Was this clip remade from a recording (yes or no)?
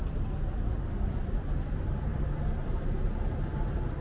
yes